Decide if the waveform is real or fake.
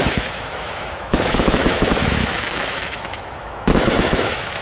fake